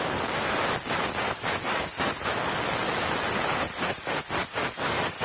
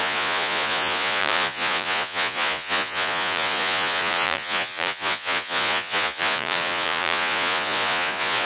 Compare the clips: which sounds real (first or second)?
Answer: first